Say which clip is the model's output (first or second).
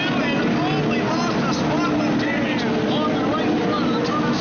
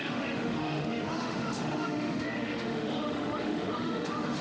second